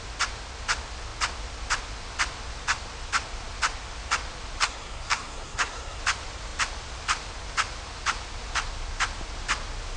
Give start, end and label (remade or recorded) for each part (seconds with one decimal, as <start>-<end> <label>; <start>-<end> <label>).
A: 0.0-4.6 recorded; 4.6-6.0 remade; 6.0-10.0 recorded